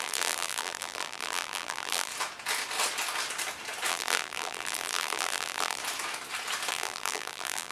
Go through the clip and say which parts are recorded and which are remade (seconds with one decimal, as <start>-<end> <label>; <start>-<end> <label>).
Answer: 0.0-2.1 remade; 2.1-3.9 recorded; 3.9-5.8 remade; 5.8-6.7 recorded; 6.7-7.7 remade